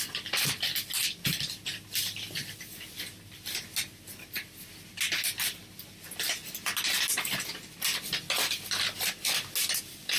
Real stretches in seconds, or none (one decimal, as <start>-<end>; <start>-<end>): 0.0-10.2